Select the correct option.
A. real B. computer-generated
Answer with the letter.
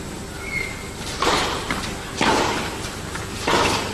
A